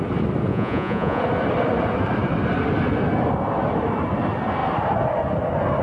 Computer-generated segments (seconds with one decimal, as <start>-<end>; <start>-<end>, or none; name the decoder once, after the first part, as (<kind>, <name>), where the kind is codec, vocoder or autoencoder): 0.5-1.2 (vocoder, Vocos)

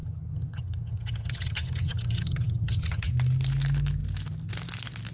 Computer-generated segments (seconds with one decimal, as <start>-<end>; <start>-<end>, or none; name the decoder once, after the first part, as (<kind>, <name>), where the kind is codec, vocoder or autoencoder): 0.0-3.1 (vocoder, HiFi-GAN)

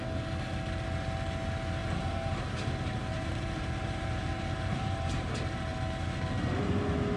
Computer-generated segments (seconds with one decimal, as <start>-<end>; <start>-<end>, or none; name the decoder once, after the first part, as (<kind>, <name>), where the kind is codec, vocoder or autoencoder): 1.8-5.3 (vocoder, BigVGAN v2)

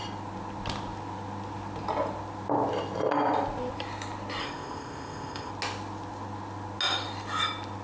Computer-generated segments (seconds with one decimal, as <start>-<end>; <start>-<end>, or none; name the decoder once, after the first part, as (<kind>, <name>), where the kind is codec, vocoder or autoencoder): 4.4-5.5 (codec, ZipCodec)

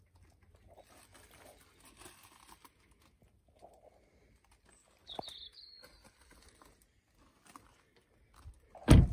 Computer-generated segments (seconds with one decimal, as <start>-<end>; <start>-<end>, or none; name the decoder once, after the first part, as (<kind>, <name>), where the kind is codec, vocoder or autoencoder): none

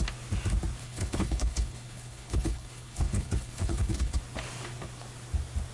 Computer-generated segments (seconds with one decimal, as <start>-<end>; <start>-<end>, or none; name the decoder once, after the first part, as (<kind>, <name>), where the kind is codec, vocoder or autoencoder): 0.8-4.2 (codec, HILCodec)